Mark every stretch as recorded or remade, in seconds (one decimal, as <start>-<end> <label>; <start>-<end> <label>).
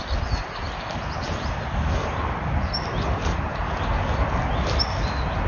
0.0-5.5 recorded